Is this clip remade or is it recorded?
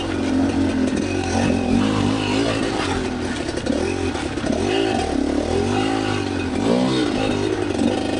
recorded